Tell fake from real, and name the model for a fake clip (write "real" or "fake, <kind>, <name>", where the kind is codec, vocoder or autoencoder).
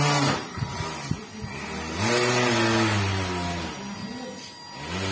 real